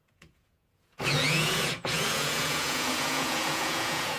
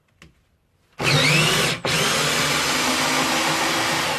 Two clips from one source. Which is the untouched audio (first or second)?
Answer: second